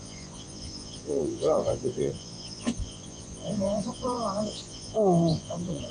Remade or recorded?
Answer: remade